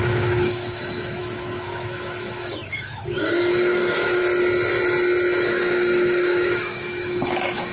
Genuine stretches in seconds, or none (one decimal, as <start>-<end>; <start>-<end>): 4.2-5.5